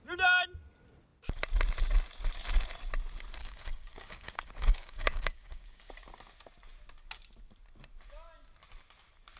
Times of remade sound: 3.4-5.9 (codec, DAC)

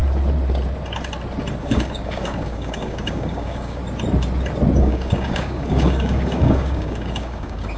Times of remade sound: 1.6-3.8 (codec, DAC); 4.8-7.8